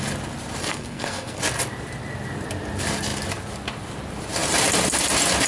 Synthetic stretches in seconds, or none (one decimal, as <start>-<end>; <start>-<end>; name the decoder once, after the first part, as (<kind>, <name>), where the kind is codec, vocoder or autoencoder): 0.6-1.4 (codec, SNAC)